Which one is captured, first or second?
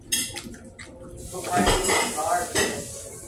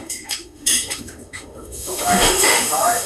first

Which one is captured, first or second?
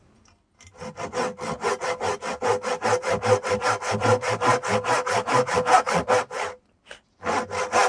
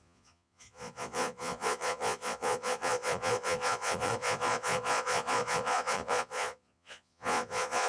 first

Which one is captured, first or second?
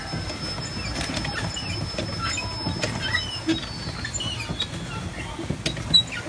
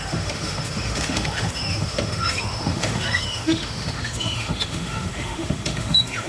first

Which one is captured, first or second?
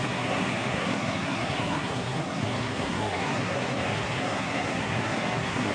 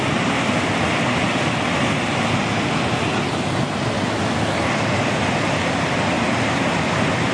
second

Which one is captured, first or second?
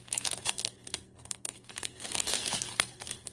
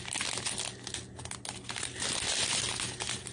second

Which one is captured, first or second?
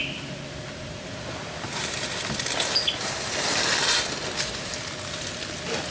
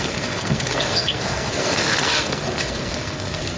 first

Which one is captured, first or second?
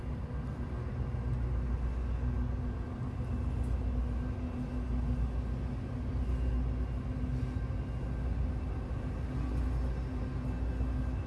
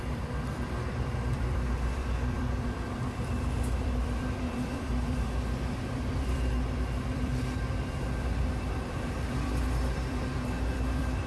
first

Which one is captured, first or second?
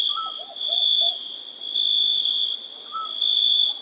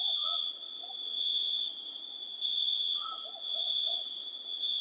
first